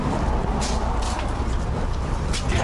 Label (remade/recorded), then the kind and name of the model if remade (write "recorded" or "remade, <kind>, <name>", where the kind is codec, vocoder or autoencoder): recorded